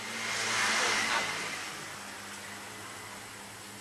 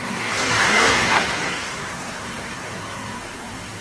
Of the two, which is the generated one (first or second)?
second